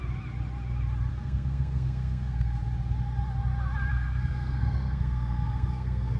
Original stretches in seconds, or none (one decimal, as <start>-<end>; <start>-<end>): 0.0-1.1; 2.6-3.9